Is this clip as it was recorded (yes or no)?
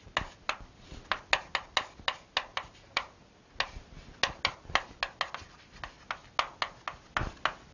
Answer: yes